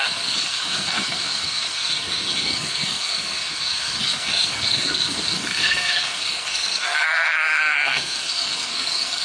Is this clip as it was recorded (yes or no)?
no